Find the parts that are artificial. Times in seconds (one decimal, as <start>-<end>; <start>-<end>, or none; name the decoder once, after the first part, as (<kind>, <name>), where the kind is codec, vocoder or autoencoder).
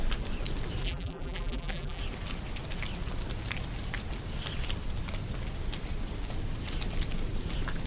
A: 0.8-2.0 (vocoder, BigVGAN v2)